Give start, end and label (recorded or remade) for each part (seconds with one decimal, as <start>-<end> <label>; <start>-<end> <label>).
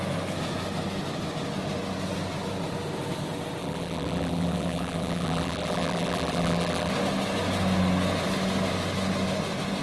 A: 0.0-3.6 recorded; 3.6-6.9 remade; 6.9-9.8 recorded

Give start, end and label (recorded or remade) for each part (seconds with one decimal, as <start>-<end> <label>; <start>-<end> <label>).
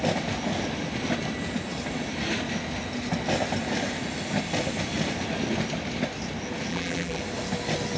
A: 0.0-6.7 recorded; 6.7-7.2 remade; 7.2-8.0 recorded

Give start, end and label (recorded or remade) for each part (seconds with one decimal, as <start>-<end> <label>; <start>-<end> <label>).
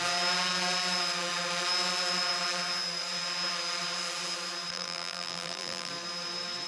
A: 0.0-4.7 recorded; 4.7-5.9 remade; 5.9-6.7 recorded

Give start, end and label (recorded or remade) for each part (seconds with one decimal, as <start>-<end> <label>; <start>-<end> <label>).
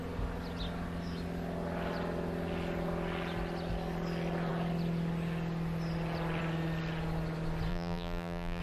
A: 0.0-7.7 recorded; 7.7-8.6 remade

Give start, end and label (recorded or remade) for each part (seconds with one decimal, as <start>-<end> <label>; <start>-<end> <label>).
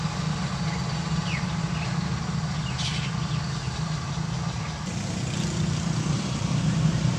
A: 0.0-2.9 recorded; 2.9-7.2 remade